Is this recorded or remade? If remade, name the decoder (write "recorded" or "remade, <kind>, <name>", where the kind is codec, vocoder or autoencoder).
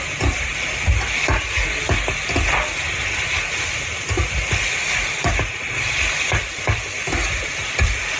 recorded